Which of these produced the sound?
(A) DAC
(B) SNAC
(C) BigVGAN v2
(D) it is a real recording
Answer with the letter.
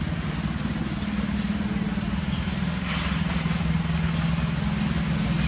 D